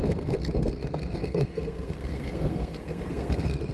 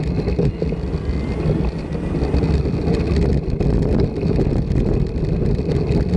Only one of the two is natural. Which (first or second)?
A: second